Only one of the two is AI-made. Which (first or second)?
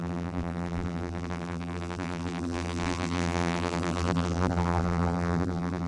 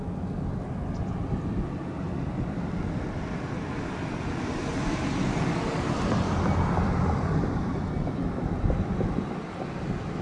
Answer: first